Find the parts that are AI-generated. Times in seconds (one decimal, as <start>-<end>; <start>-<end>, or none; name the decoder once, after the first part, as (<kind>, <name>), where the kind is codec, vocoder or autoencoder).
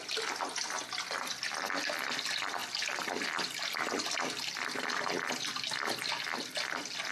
none